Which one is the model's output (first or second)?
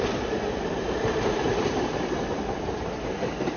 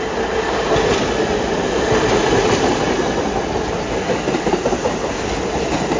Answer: first